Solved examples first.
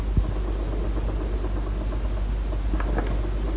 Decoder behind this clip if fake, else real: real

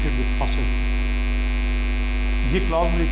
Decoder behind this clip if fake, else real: real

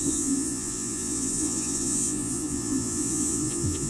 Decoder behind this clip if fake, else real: fake, vocoder, Vocos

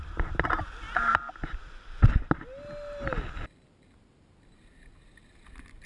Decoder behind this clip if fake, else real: real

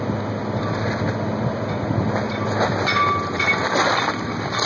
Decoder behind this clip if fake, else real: real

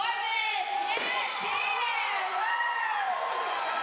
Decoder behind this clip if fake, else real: fake, vocoder, Vocos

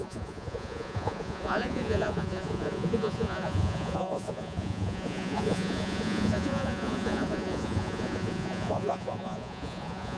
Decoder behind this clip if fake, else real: fake, vocoder, Vocos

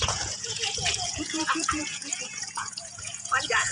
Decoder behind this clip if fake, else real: fake, vocoder, Vocos